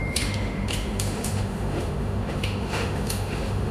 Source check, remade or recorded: remade